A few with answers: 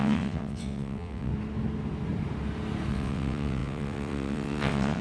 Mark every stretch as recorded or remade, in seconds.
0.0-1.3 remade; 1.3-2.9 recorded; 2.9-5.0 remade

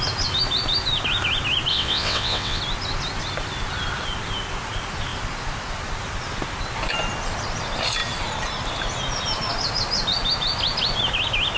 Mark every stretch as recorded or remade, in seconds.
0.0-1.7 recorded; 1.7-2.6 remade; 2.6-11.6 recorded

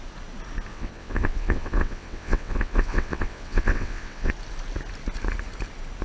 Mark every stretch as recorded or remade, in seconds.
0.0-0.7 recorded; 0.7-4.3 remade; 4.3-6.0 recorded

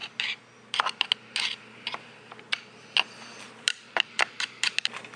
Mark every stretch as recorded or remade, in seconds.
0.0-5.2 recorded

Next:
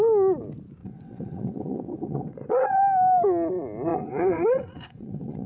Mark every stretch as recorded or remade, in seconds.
0.0-0.8 recorded; 0.8-2.8 remade; 2.8-3.9 recorded; 3.9-5.5 remade